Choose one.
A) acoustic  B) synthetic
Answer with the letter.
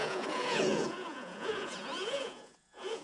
B